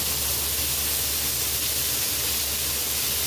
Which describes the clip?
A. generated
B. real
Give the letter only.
B